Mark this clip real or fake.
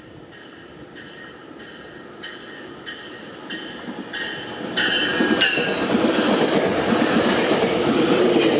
real